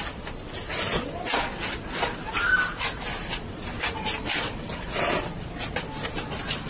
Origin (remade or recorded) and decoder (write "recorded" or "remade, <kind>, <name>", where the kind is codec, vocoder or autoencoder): recorded